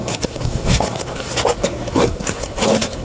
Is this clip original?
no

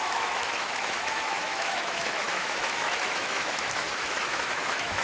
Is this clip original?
no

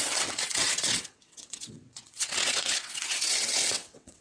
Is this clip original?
no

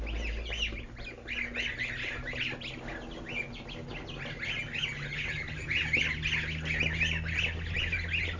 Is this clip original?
yes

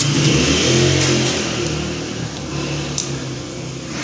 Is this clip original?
yes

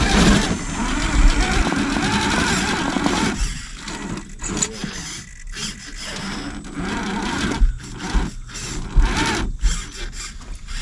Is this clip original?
yes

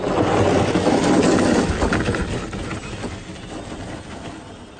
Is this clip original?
yes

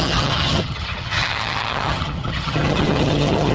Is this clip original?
no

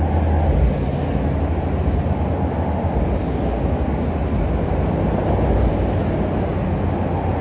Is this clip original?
yes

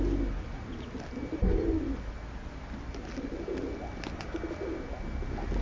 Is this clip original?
yes